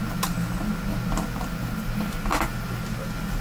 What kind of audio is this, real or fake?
real